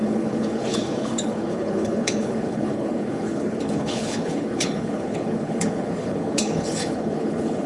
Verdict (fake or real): fake